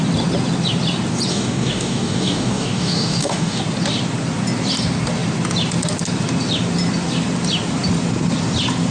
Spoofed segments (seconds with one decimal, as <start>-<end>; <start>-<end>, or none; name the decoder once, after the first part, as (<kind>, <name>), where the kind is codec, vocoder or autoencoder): 1.3-3.6 (codec, DAC)